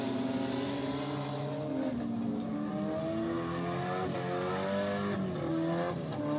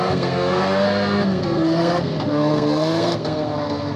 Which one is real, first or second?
first